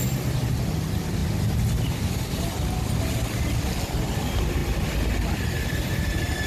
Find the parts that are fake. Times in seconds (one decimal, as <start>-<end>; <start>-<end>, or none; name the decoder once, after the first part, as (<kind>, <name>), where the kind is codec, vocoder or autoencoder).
none